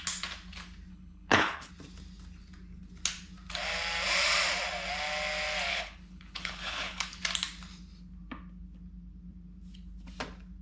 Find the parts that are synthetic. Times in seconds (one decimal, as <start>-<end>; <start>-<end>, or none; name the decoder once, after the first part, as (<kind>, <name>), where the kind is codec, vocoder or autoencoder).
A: 0.9-1.7 (codec, HILCodec); 5.7-7.2